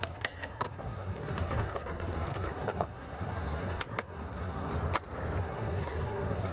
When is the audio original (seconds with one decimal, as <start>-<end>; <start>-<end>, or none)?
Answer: 4.7-5.4